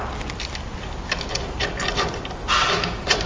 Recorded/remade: recorded